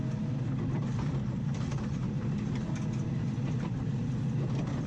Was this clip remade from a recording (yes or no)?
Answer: no